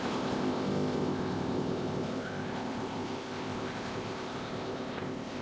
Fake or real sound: fake